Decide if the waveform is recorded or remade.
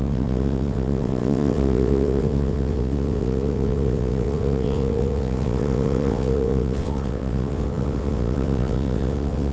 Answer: remade